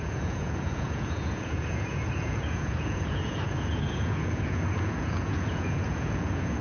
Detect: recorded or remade remade